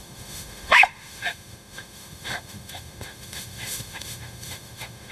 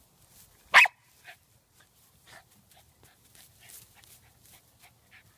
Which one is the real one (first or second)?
second